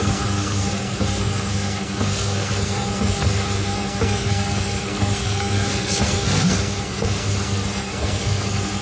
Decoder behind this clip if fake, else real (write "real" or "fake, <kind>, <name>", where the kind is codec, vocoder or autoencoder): fake, codec, SNAC